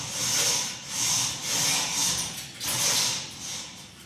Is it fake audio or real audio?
real